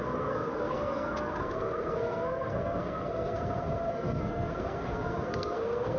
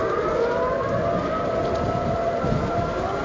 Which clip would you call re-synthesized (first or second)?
first